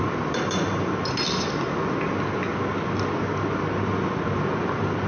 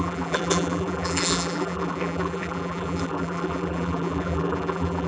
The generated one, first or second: second